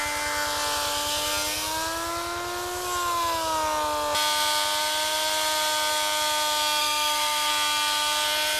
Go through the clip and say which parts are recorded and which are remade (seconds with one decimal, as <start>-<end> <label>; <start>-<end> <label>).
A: 0.0-6.8 recorded; 6.8-7.5 remade; 7.5-8.6 recorded